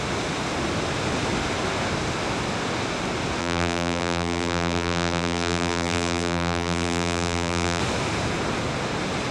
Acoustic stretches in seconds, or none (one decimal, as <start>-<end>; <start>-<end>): 0.0-3.4; 7.8-9.3